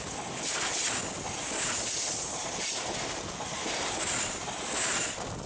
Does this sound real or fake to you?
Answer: real